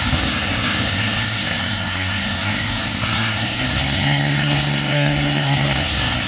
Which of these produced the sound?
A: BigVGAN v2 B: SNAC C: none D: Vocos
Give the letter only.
B